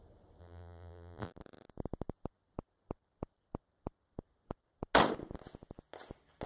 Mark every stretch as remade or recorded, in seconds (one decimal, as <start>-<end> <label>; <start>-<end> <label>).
0.0-0.4 recorded; 0.4-1.3 remade; 1.3-6.5 recorded